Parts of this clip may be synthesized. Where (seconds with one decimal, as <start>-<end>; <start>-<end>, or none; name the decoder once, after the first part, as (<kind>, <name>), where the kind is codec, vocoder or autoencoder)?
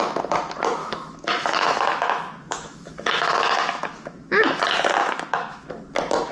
0.8-4.6 (autoencoder, DAC-VAE); 5.0-5.7